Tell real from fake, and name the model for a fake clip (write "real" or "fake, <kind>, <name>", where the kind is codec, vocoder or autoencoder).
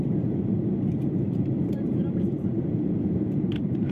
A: fake, vocoder, BigVGAN v2